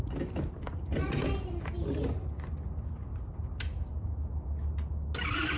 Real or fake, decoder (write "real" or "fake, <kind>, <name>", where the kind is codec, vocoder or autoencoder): real